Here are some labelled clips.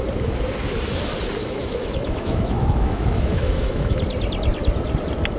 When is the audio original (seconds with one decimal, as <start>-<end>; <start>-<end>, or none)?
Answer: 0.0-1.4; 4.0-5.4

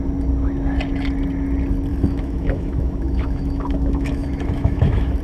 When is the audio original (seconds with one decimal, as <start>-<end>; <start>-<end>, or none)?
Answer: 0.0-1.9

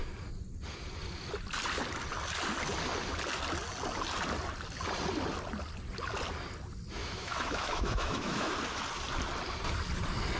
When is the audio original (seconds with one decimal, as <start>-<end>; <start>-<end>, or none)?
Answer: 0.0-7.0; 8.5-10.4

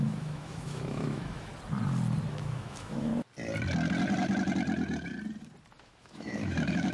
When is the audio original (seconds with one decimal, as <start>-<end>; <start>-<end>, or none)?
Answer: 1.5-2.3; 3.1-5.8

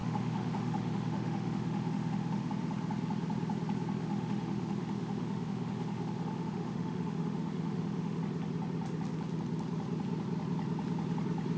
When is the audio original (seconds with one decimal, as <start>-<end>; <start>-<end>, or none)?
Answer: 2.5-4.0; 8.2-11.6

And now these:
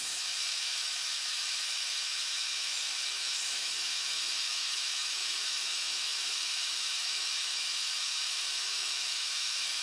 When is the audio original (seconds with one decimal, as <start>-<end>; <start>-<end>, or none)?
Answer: none

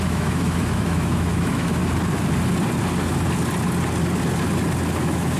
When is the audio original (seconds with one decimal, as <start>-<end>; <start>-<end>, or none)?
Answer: 1.8-5.0